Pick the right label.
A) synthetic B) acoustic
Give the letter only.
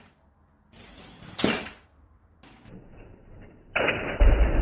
B